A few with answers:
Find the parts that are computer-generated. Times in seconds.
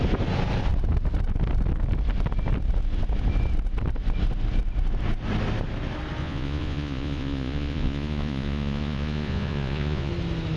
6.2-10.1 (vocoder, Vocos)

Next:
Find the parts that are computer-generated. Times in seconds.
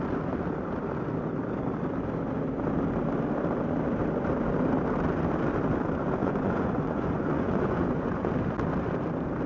6.2-8.3 (vocoder, Vocos)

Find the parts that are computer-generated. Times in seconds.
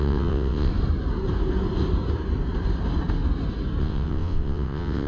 0.0-0.7 (vocoder, WaveNeXt); 3.8-5.1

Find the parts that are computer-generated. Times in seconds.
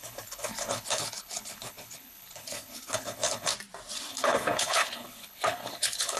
0.0-3.5 (codec, HILCodec); 4.1-6.2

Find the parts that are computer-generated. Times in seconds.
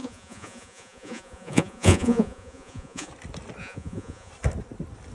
0.0-3.1 (vocoder, Vocos); 3.6-4.3